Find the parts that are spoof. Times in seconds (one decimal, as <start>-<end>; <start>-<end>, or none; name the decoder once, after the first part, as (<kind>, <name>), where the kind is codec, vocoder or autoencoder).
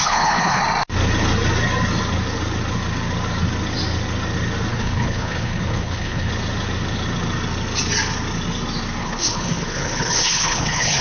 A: 0.0-0.6 (codec, HILCodec); 4.7-6.3; 9.0-11.0